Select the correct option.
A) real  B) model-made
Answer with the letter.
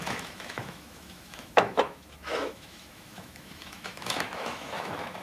B